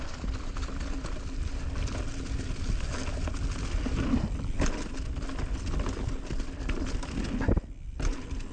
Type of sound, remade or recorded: recorded